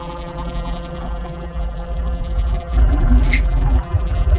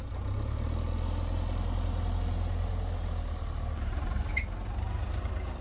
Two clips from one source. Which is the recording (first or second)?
second